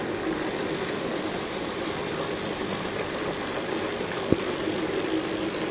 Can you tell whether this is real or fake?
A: real